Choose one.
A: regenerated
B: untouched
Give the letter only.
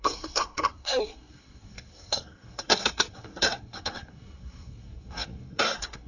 A